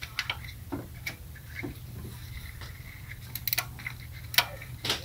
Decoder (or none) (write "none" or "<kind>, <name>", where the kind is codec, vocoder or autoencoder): none